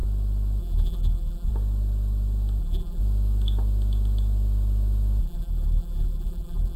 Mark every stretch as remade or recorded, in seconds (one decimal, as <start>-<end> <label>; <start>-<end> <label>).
0.0-0.6 recorded; 0.6-1.5 remade; 1.5-2.6 recorded; 2.6-3.0 remade; 3.0-5.2 recorded; 5.2-6.8 remade